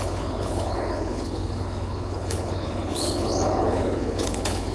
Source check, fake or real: fake